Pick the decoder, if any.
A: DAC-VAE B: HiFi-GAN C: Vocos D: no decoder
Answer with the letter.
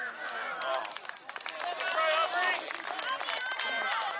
D